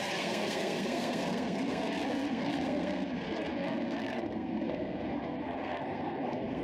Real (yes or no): no